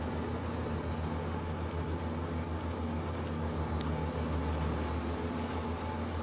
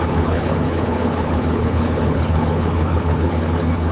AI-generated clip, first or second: second